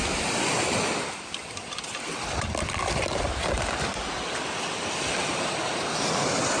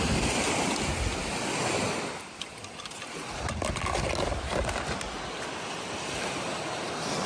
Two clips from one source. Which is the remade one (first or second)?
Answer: first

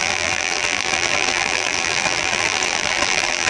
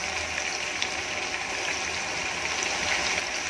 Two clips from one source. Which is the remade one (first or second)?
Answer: first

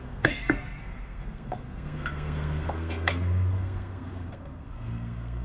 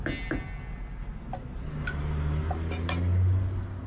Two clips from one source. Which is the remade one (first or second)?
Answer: first